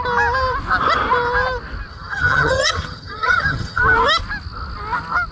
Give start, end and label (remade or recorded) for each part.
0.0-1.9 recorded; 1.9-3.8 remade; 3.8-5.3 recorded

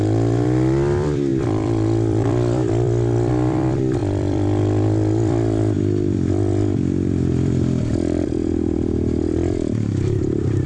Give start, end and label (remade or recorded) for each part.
0.0-10.7 remade

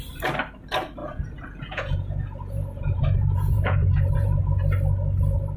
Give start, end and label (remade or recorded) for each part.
0.0-1.0 recorded; 1.0-4.4 remade; 4.4-5.6 recorded

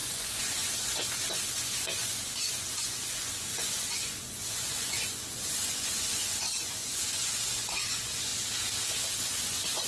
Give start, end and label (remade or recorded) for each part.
0.0-8.3 remade; 8.3-9.2 recorded; 9.2-9.9 remade